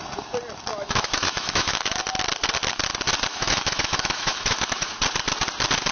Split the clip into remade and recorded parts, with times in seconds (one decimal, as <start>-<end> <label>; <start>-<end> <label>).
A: 0.0-0.7 recorded; 0.7-2.0 remade; 2.0-3.3 recorded; 3.3-4.9 remade; 4.9-5.9 recorded